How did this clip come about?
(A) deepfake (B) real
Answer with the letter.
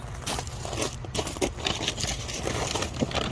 B